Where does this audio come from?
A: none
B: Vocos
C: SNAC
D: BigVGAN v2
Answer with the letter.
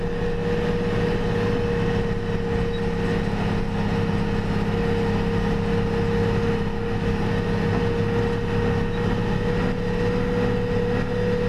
A